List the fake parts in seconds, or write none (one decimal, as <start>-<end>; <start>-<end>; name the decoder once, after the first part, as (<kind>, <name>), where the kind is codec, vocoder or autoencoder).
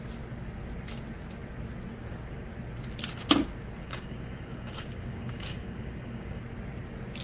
3.8-6.4 (codec, DAC)